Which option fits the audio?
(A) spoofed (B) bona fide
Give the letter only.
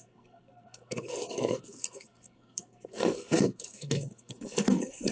A